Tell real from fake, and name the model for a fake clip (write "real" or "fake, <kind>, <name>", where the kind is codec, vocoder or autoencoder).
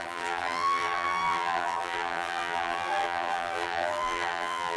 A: fake, vocoder, BigVGAN v2